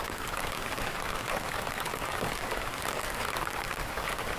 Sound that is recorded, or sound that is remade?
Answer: remade